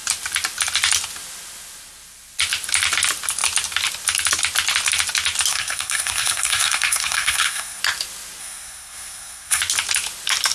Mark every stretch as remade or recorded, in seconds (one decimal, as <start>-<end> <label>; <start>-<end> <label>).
0.0-5.5 recorded; 5.5-7.8 remade; 7.8-8.4 recorded; 8.4-9.6 remade; 9.6-10.5 recorded